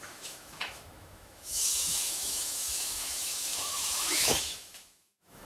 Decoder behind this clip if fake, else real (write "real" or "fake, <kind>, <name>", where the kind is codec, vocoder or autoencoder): fake, autoencoder, DAC-VAE